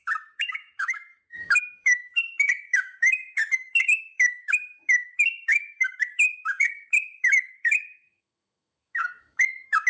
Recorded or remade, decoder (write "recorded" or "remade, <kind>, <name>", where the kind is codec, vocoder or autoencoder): remade, autoencoder, DAC-VAE